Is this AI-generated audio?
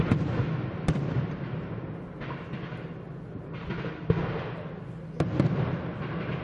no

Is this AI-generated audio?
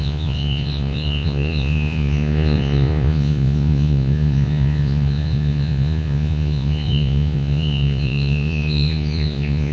yes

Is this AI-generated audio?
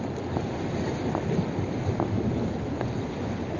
no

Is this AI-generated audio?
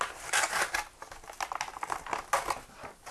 no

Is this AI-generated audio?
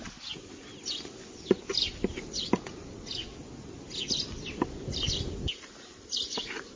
no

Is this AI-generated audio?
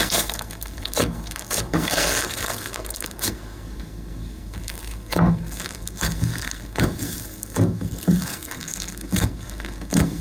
yes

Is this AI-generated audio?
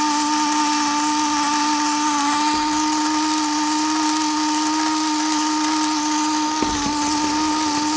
no